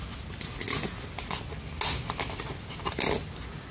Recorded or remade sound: recorded